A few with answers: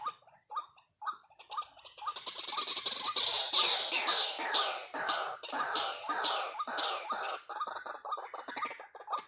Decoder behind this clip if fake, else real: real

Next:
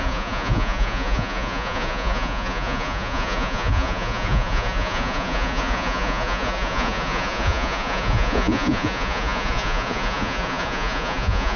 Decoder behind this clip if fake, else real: fake, vocoder, Vocos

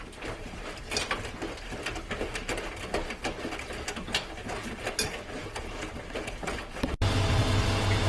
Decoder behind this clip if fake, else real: real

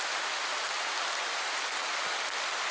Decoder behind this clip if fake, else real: real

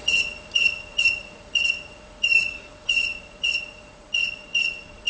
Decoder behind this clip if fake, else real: fake, vocoder, Vocos